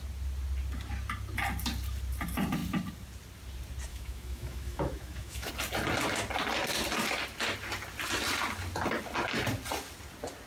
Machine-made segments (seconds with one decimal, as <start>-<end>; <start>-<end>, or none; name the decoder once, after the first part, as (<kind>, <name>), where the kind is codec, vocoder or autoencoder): 3.9-5.5 (autoencoder, DAC-VAE)